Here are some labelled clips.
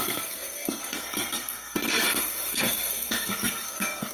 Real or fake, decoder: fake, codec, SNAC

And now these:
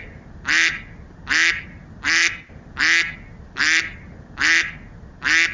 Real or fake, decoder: real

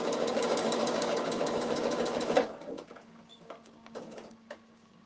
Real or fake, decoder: fake, codec, DAC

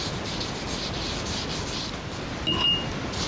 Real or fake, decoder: real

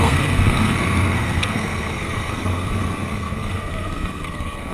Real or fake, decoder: fake, codec, SNAC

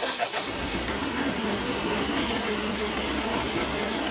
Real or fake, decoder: fake, codec, SNAC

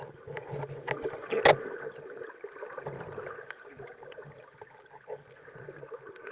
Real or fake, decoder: real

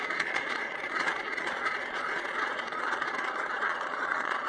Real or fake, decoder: fake, vocoder, Vocos